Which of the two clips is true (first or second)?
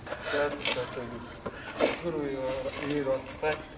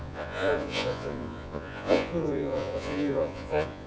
first